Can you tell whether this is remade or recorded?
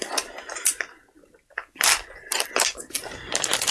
remade